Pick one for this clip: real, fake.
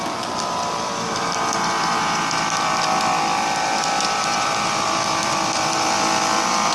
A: fake